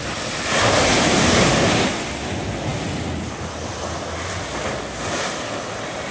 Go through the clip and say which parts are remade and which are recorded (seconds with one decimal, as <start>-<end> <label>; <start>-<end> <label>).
0.0-0.9 recorded; 0.9-2.0 remade; 2.0-6.1 recorded